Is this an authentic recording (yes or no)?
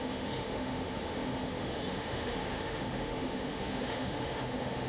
no